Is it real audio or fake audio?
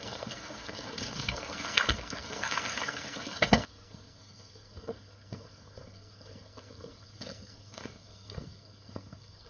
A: fake